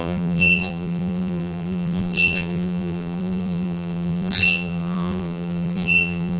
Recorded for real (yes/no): no